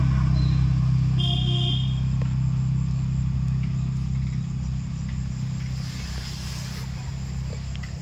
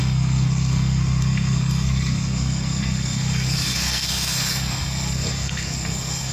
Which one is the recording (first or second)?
first